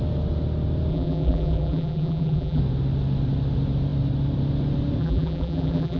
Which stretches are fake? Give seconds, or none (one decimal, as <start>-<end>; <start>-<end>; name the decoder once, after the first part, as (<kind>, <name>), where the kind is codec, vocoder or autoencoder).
0.9-2.6 (vocoder, BigVGAN v2); 5.0-6.0